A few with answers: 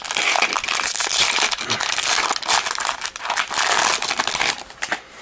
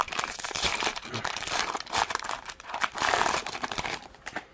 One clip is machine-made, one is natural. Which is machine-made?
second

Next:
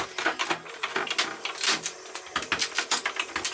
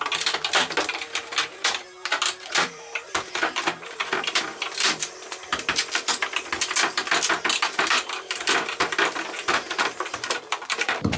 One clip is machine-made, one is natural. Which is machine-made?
second